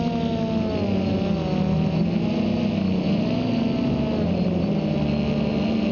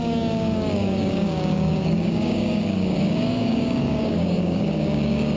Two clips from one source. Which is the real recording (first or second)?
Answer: first